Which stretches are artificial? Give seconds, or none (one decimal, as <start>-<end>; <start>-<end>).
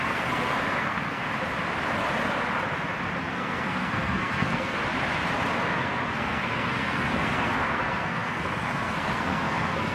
0.0-1.2; 3.2-4.8; 5.8-9.9